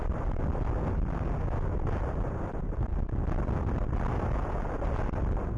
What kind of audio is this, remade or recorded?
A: recorded